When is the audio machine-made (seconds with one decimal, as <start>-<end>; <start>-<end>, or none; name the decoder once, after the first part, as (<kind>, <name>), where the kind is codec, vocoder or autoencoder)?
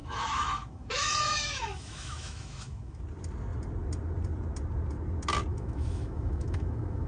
0.0-3.0 (autoencoder, DAC-VAE); 5.5-7.1